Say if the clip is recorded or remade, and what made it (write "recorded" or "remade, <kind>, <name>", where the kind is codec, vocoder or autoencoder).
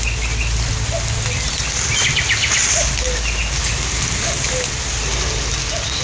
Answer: recorded